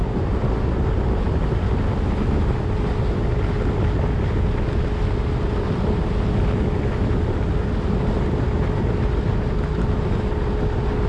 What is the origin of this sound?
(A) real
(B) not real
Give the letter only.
A